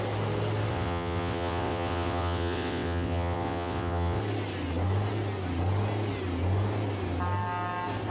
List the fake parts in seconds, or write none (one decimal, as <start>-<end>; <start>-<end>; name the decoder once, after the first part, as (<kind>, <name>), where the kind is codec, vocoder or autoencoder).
0.7-4.2 (vocoder, WaveNeXt)